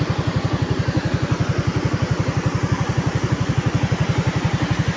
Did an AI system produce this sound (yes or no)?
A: no